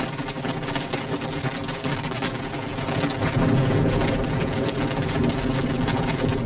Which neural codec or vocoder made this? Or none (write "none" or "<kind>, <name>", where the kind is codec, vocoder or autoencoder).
none